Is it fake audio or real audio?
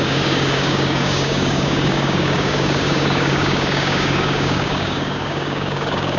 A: fake